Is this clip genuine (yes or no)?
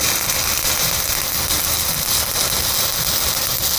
yes